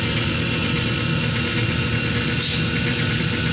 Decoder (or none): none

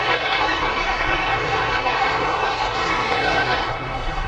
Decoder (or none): codec, SNAC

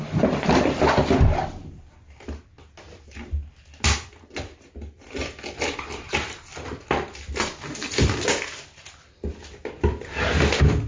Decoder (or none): none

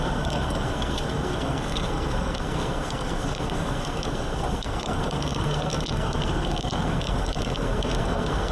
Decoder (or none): codec, SNAC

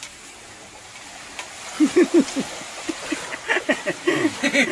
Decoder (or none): none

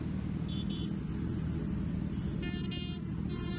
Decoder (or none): none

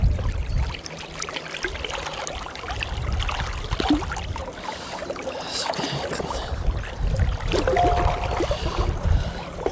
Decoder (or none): none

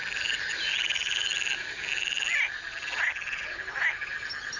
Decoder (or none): none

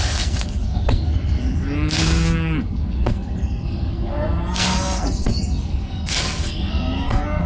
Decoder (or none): codec, SNAC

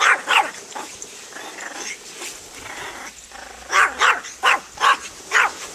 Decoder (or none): none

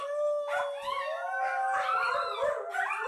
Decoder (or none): none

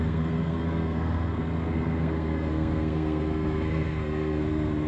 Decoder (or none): codec, SNAC